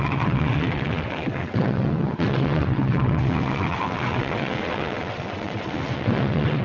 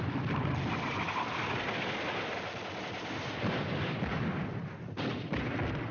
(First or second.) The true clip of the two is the second